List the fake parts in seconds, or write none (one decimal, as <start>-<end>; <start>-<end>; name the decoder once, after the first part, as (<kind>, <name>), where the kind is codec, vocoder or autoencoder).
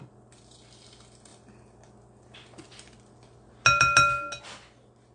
none